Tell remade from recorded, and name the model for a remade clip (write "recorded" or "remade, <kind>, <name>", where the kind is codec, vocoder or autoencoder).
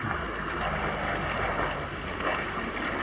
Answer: recorded